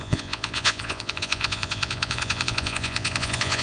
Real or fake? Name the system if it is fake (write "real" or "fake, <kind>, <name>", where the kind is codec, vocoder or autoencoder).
fake, vocoder, Vocos